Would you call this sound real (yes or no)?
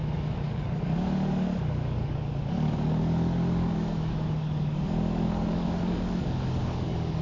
no